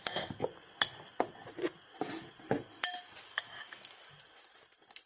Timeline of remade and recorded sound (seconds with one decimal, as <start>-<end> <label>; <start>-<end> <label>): 0.0-3.3 recorded; 3.3-4.1 remade; 4.1-5.1 recorded